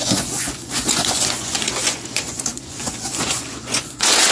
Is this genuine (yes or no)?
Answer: no